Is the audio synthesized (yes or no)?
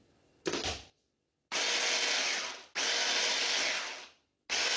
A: no